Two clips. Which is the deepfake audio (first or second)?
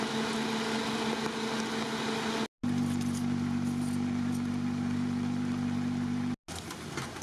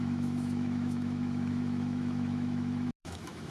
second